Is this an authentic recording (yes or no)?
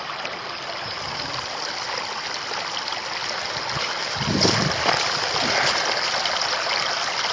yes